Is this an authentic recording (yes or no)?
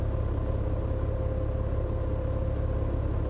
yes